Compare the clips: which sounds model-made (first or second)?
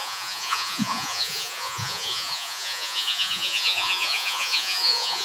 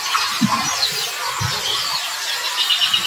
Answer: first